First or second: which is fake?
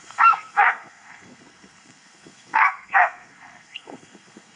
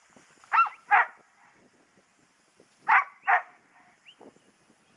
first